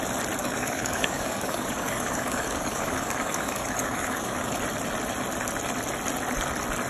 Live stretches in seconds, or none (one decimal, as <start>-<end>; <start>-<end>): 0.0-0.4; 4.5-6.9